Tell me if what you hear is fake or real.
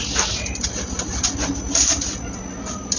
real